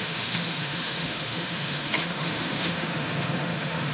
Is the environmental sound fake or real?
fake